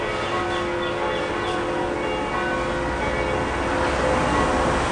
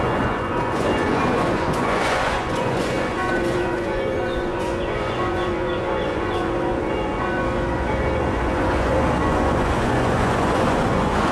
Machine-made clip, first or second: second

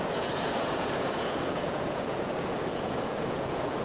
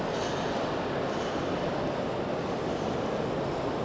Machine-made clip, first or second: first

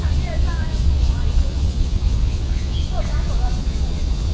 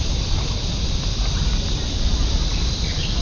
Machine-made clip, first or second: first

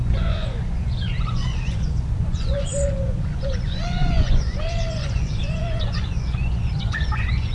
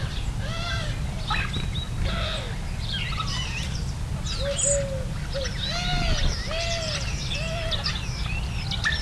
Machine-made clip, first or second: first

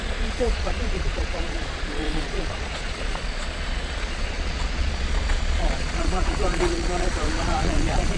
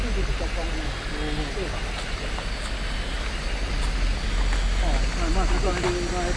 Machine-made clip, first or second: first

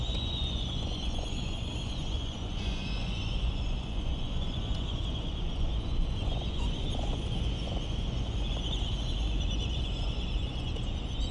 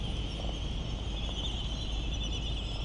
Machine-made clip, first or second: first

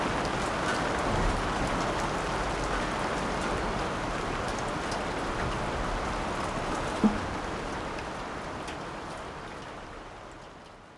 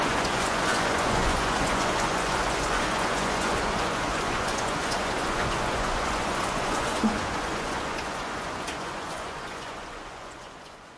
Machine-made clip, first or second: second